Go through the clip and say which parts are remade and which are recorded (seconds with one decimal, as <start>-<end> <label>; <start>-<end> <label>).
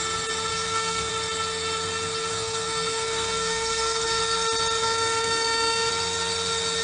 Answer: 0.0-0.5 recorded; 0.5-1.1 remade; 1.1-2.3 recorded; 2.3-4.2 remade; 4.2-4.8 recorded; 4.8-5.9 remade; 5.9-6.8 recorded